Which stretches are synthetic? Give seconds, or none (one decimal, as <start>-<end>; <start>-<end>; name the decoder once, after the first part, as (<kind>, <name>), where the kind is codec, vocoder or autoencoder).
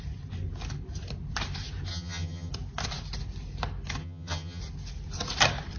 1.9-2.5 (vocoder, HiFi-GAN); 4.0-4.6